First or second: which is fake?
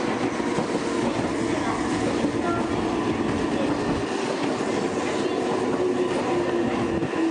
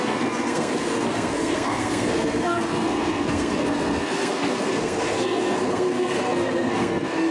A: second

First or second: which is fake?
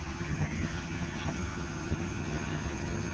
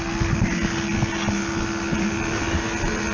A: first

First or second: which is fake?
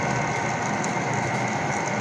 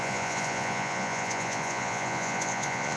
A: second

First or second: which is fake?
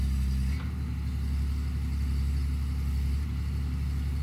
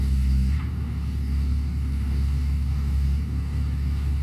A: second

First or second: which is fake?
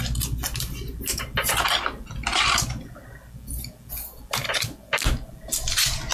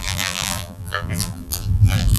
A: second